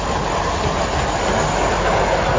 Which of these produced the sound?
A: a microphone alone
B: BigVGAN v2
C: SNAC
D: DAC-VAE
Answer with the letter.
A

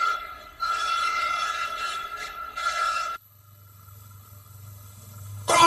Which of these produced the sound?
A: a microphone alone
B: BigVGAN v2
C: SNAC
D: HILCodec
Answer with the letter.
D